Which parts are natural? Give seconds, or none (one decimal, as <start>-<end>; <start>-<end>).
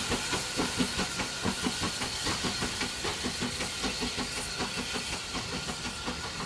0.0-0.9; 1.9-6.5